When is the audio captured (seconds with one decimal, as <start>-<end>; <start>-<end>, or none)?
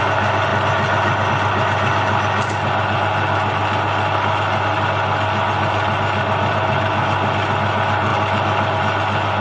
0.0-9.4